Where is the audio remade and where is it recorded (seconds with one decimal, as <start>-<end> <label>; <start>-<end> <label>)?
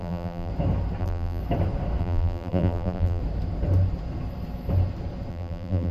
0.0-0.5 remade; 0.5-1.0 recorded; 1.0-1.4 remade; 1.4-2.0 recorded; 2.0-3.2 remade; 3.2-5.3 recorded; 5.3-5.9 remade